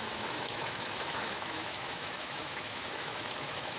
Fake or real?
fake